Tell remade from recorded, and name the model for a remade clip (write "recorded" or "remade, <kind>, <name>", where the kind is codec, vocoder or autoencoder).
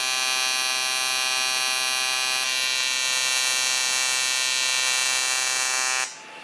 recorded